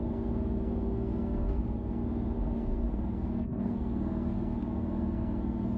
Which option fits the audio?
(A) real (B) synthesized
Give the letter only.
B